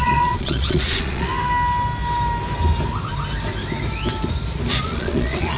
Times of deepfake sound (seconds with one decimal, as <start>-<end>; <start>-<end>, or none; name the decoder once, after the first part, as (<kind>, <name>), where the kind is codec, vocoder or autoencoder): 0.0-1.3 (vocoder, Vocos); 4.7-5.6